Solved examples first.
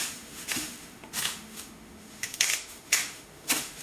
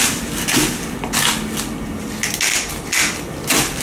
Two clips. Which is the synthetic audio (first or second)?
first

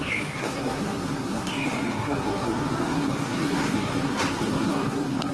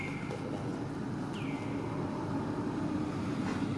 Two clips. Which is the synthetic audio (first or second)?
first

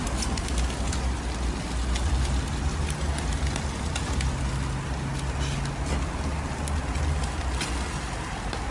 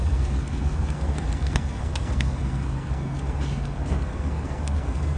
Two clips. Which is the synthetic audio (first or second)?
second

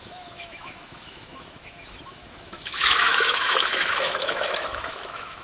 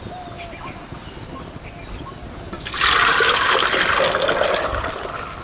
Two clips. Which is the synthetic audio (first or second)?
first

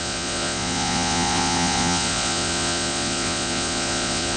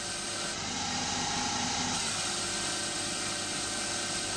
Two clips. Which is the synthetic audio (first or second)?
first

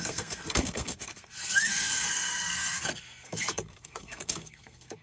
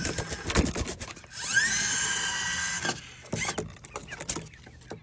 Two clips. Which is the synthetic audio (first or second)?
first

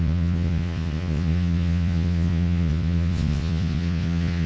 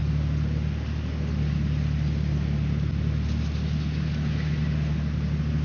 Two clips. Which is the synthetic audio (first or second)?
first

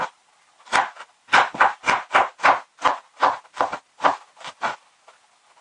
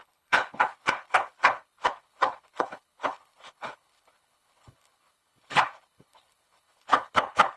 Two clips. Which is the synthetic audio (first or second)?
second